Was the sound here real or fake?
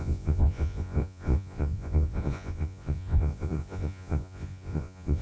fake